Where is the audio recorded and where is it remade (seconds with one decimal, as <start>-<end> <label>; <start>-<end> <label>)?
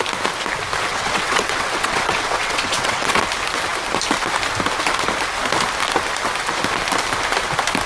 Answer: 0.0-0.9 recorded; 0.9-3.2 remade; 3.2-7.9 recorded